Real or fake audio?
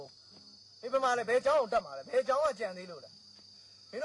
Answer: real